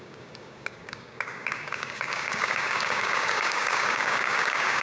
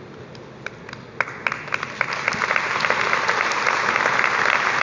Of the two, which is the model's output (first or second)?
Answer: first